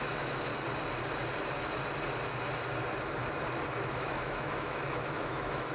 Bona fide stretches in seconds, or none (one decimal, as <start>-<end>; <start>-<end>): 0.5-3.9